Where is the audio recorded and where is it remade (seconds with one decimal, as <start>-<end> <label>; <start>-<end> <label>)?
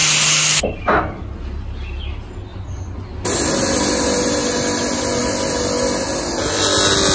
0.0-7.1 recorded